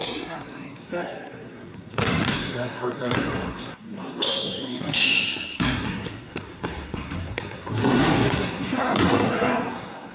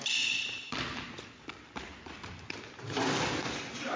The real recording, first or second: second